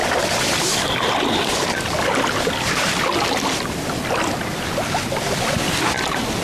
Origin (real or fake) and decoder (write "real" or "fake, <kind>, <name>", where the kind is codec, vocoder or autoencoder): real